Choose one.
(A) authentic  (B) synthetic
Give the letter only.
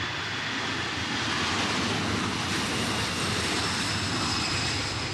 A